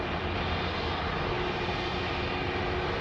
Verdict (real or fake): real